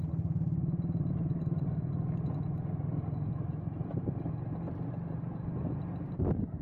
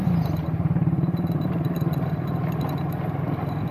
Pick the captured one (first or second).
first